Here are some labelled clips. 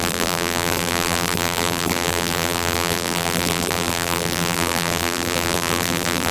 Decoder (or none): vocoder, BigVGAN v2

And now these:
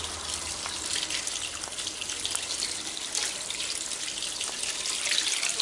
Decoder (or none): none